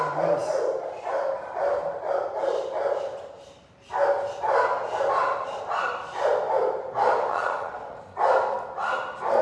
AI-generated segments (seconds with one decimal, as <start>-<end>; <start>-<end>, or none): 7.3-8.0